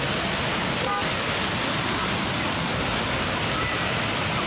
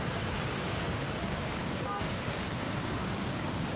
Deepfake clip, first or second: second